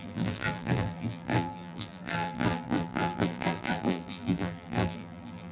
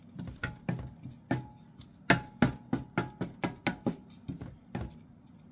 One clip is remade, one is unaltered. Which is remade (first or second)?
first